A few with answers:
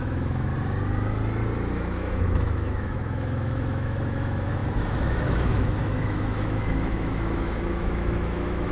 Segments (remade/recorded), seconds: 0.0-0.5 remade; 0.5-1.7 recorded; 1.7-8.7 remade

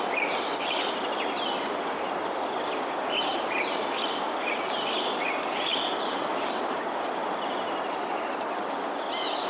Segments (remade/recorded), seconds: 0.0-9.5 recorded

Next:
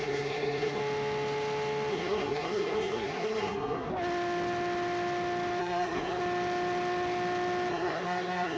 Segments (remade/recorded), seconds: 0.0-0.8 remade; 0.8-1.9 recorded; 1.9-3.9 remade; 3.9-5.6 recorded; 5.6-6.2 remade; 6.2-7.7 recorded; 7.7-8.6 remade